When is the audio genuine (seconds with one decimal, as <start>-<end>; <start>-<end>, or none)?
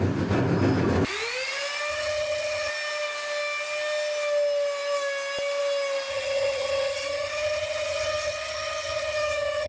0.0-1.9; 2.7-6.1